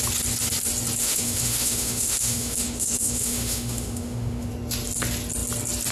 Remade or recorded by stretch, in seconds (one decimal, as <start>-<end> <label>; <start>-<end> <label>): 0.0-1.0 recorded; 1.0-4.5 remade; 4.5-5.9 recorded